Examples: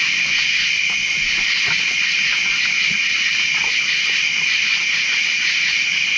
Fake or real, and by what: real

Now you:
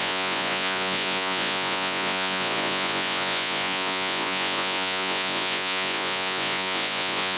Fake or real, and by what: fake, vocoder, Vocos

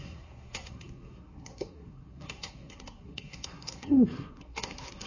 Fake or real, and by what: fake, codec, SNAC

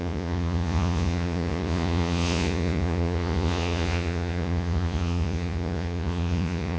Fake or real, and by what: fake, vocoder, Vocos